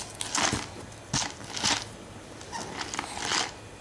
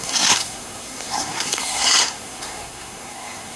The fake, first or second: second